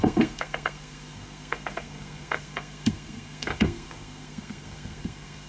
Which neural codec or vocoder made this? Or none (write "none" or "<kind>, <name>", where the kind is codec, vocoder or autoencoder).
codec, SNAC